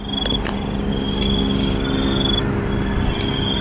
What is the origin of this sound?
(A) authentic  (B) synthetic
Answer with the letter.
A